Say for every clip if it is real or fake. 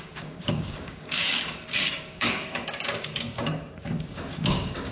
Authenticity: fake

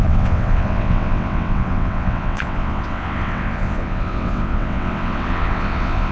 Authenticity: fake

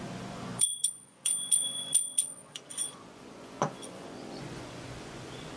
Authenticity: fake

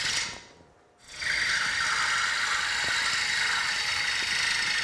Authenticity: real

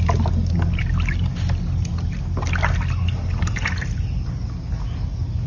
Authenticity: real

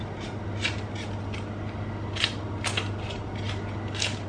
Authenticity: real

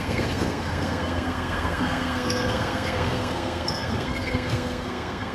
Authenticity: fake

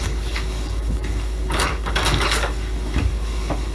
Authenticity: fake